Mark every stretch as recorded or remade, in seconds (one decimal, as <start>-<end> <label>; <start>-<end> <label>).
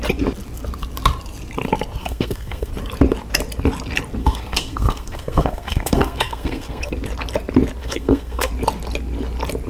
0.0-2.0 recorded; 2.0-2.7 remade; 2.7-4.2 recorded; 4.2-6.9 remade; 6.9-7.8 recorded; 7.8-8.5 remade; 8.5-9.7 recorded